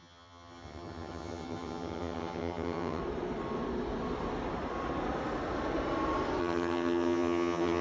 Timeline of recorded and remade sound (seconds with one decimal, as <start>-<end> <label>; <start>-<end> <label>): 0.0-3.0 remade; 3.0-6.4 recorded; 6.4-7.8 remade